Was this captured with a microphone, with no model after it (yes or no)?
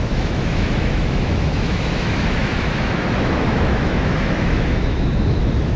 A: no